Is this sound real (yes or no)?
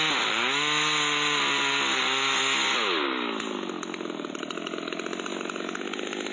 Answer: yes